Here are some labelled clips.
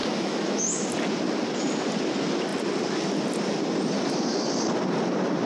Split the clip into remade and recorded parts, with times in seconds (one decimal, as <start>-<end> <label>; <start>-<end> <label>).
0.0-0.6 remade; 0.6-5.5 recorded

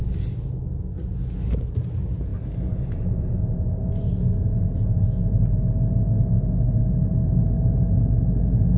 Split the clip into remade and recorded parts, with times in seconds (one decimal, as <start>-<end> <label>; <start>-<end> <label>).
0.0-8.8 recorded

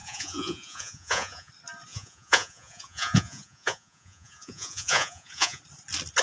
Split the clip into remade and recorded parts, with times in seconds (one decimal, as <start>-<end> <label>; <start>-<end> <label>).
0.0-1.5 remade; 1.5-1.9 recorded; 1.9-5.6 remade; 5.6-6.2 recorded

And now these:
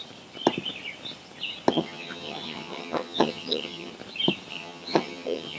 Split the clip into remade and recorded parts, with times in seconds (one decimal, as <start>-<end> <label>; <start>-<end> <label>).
0.0-1.7 recorded; 1.7-3.9 remade; 3.9-4.5 recorded; 4.5-5.6 remade